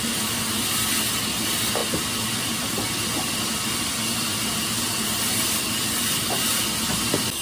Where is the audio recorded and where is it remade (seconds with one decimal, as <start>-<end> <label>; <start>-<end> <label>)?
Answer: 0.0-7.4 recorded